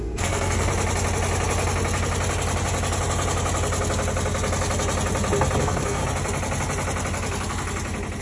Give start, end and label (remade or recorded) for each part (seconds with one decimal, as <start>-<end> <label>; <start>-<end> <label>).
0.0-0.7 remade; 0.7-5.6 recorded; 5.6-6.0 remade; 6.0-8.2 recorded

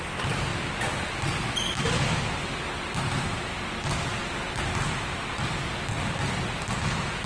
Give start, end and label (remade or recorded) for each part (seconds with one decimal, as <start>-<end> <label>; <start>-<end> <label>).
0.0-7.3 recorded

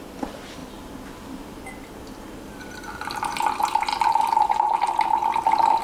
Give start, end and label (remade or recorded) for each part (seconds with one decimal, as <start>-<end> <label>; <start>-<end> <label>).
0.0-3.9 recorded; 3.9-4.9 remade; 4.9-5.8 recorded

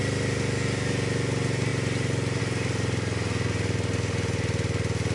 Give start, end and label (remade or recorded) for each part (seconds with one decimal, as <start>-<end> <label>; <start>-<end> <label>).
0.0-5.1 recorded

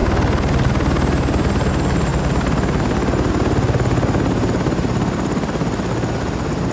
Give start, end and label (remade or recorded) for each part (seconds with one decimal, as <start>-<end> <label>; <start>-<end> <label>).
0.0-6.7 recorded

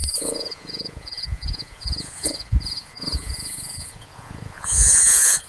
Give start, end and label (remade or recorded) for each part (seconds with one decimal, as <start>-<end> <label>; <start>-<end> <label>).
0.0-5.5 remade